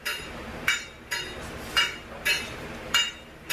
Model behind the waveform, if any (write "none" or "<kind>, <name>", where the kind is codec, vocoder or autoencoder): vocoder, BigVGAN v2